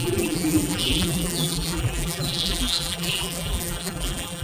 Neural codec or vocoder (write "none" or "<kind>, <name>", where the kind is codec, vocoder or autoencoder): vocoder, BigVGAN v2